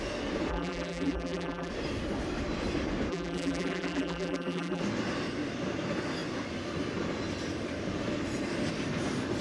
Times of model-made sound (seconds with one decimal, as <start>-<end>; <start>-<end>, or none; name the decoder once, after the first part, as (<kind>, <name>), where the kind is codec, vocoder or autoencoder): 0.5-1.7 (vocoder, BigVGAN v2); 3.1-4.8